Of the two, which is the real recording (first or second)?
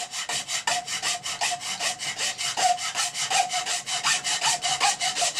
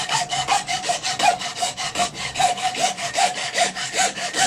first